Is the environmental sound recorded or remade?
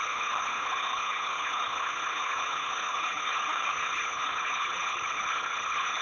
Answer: remade